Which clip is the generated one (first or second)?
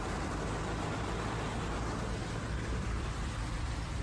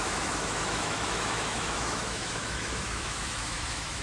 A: second